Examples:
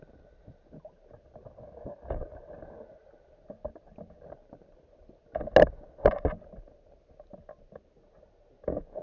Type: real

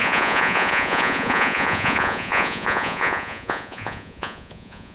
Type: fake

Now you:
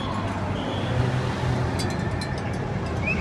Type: real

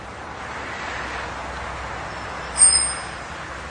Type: real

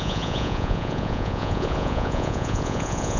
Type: fake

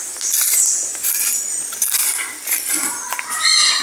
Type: real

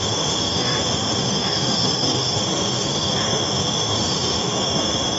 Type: fake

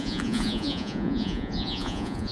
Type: fake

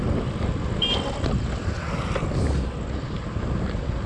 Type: real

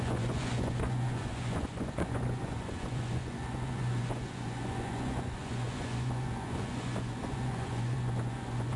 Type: fake